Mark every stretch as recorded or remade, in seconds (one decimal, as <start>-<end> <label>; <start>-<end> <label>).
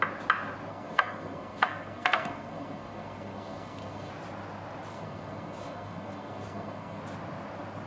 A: 0.0-0.7 recorded; 0.7-4.1 remade; 4.1-4.9 recorded; 4.9-7.0 remade; 7.0-7.9 recorded